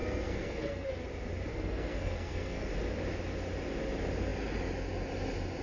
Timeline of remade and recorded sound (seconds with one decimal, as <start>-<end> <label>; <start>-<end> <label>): 0.0-0.9 remade; 0.9-1.5 recorded; 1.5-2.7 remade; 2.7-5.6 recorded